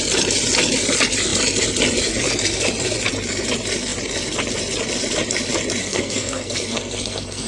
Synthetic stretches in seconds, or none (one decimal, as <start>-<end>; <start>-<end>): 5.8-7.5